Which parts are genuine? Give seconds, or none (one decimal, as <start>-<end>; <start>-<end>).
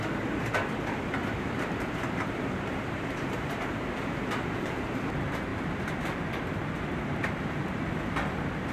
0.0-1.2; 5.1-8.7